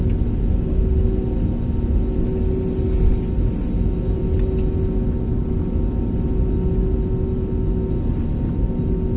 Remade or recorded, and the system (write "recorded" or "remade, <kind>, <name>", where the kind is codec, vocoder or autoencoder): recorded